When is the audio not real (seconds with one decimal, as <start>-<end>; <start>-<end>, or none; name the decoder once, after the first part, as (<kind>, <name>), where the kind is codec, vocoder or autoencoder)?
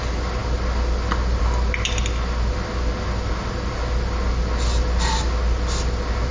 none